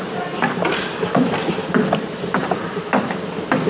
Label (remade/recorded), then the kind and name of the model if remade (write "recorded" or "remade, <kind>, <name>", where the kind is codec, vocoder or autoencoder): recorded